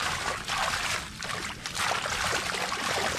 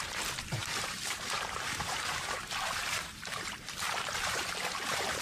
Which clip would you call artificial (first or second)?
second